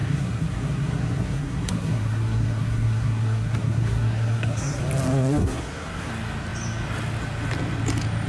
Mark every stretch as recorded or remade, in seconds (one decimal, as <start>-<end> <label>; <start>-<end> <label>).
0.0-4.8 remade; 4.8-5.4 recorded; 5.4-6.1 remade; 6.1-8.3 recorded